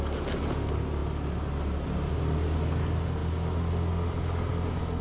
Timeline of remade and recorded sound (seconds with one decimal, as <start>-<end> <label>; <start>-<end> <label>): 0.0-5.0 recorded